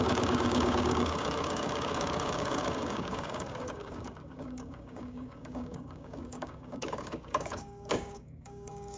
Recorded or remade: remade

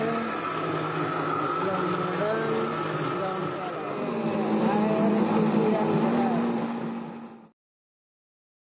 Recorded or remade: recorded